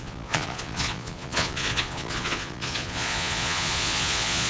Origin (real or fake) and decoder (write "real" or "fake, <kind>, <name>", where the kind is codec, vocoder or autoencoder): fake, vocoder, Vocos